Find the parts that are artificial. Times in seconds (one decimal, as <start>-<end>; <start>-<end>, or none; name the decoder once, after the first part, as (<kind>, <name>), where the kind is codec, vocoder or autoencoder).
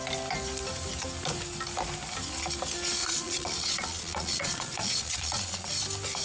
3.0-5.7 (vocoder, Vocos)